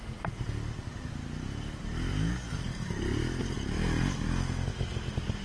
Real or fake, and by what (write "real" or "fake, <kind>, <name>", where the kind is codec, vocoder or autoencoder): real